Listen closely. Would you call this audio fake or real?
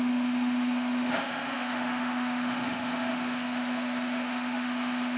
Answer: fake